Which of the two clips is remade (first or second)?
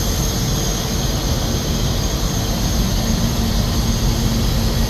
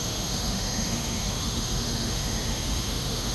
second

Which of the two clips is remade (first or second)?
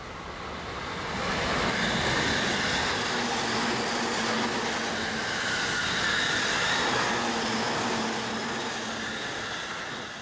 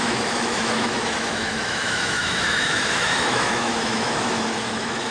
second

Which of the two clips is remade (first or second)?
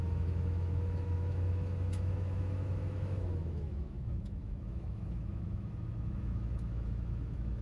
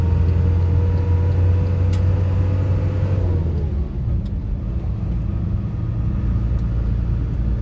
first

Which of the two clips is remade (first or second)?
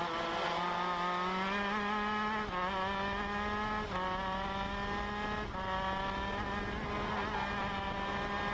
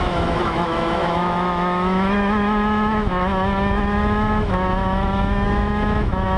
second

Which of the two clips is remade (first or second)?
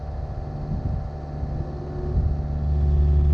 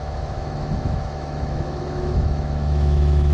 second